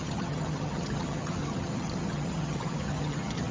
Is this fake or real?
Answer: fake